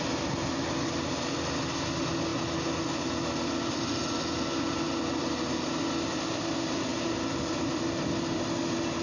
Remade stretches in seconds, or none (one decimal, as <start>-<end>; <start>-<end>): none